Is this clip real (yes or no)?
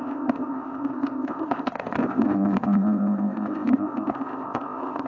no